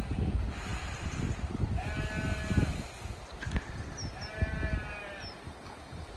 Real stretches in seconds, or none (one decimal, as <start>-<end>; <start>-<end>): 0.0-6.2

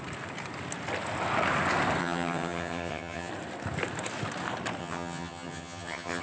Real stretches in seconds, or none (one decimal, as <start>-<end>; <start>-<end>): 0.0-2.0; 3.3-4.8